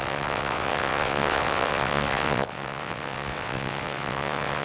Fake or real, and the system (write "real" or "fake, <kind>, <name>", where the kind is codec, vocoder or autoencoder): fake, vocoder, WaveNeXt